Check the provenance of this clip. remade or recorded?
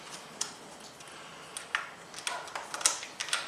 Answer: recorded